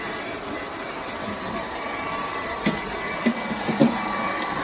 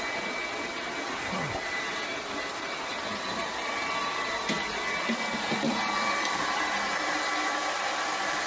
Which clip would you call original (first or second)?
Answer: second